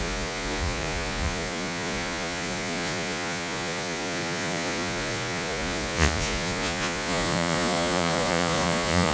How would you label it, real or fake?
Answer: fake